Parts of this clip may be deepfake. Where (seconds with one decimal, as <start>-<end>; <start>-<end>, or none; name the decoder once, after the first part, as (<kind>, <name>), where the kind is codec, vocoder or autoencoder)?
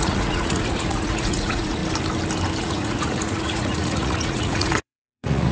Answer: 0.0-1.8 (vocoder, Vocos); 2.6-5.5